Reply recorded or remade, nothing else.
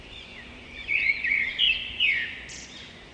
remade